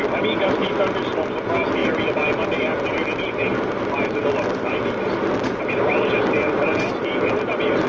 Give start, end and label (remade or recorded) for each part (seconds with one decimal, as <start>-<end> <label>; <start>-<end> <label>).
0.0-7.9 recorded